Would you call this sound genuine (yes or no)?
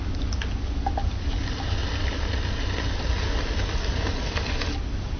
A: yes